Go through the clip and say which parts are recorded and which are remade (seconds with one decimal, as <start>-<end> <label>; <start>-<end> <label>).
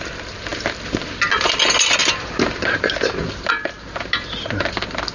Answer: 0.0-5.1 recorded